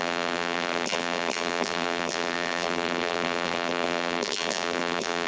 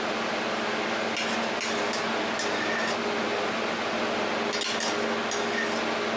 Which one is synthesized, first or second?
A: first